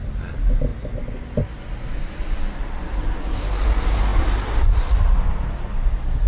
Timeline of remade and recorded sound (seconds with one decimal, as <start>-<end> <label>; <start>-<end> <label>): 0.0-6.3 recorded